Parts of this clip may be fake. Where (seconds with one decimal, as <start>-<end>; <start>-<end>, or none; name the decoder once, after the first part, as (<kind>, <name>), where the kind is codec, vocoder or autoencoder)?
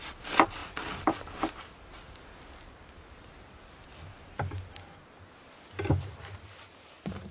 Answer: none